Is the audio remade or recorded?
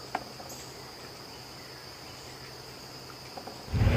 recorded